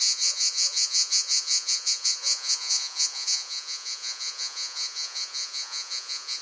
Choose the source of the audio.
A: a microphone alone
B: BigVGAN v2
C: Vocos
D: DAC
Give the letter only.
C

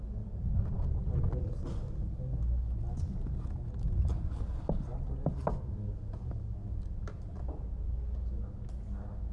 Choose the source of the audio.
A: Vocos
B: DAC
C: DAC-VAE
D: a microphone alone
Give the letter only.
D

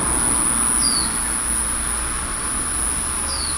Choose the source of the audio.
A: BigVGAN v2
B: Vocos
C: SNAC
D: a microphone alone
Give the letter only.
D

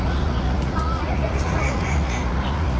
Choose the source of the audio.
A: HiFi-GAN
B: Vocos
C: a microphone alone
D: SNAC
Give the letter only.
B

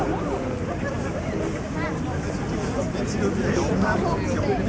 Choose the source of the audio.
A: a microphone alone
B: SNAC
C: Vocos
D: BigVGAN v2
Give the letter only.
A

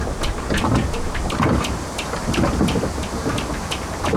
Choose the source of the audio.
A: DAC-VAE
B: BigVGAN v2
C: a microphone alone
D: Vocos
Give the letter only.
C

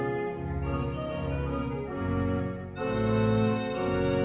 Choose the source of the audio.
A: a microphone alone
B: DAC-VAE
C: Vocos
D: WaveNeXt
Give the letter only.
A